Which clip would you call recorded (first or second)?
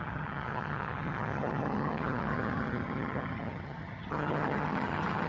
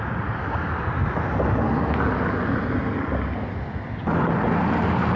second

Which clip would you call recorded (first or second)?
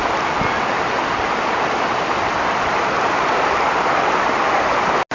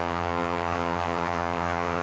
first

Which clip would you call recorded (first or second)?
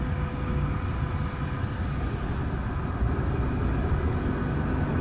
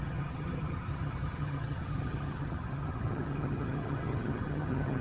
first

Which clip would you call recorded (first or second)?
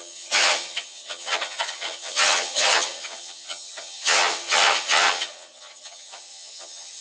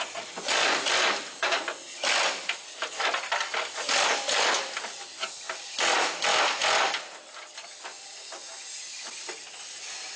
second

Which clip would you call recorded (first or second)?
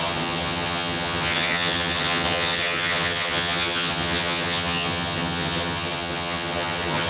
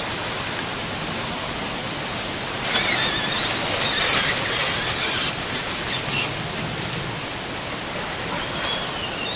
second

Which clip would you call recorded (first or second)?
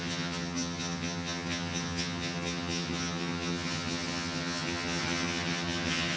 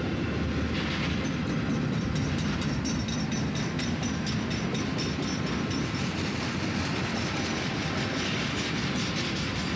second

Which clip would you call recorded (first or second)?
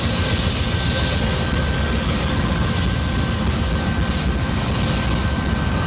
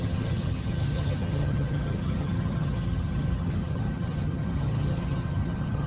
first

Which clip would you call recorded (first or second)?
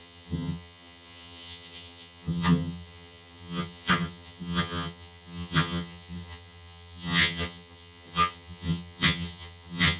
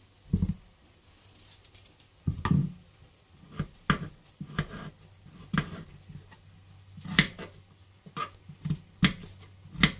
second